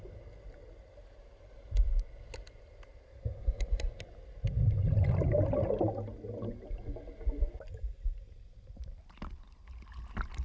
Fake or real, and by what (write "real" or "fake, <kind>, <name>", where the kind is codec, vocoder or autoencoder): real